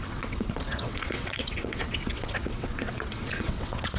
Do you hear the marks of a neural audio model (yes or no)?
yes